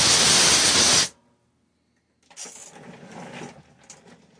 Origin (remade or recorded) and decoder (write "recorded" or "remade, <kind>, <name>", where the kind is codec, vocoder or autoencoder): recorded